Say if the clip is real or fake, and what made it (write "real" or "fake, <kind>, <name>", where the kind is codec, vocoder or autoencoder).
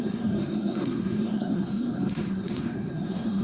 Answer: fake, codec, SNAC